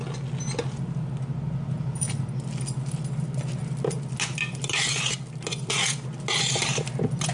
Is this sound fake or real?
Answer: real